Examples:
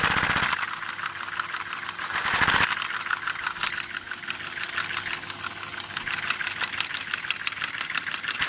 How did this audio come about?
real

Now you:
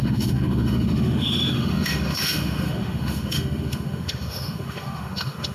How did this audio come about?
fake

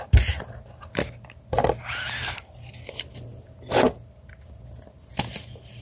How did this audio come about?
real